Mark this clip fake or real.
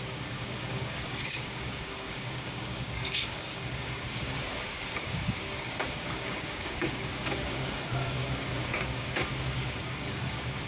fake